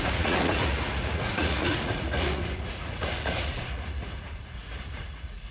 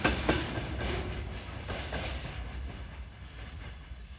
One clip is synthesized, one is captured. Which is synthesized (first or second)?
first